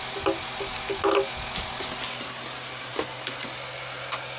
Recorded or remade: recorded